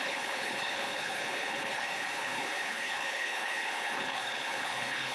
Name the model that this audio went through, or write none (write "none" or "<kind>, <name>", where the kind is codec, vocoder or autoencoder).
codec, HILCodec